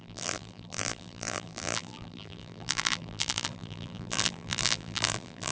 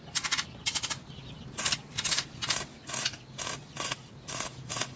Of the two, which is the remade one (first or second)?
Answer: first